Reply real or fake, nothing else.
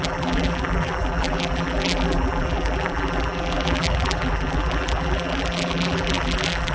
fake